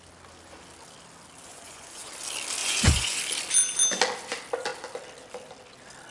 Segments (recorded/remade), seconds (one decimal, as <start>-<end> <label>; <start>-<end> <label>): 0.0-1.5 recorded; 1.5-2.1 remade; 2.1-2.6 recorded; 2.6-3.2 remade; 3.2-6.1 recorded